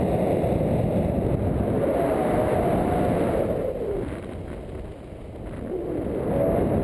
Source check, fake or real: real